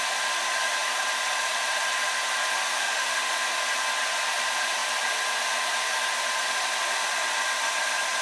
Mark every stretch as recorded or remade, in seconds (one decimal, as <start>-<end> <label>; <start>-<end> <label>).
0.0-2.7 recorded; 2.7-3.3 remade; 3.3-8.2 recorded